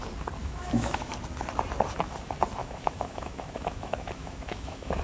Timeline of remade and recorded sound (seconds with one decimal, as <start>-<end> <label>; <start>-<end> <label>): 0.0-0.4 recorded; 0.4-1.1 remade; 1.1-2.6 recorded; 2.6-5.0 remade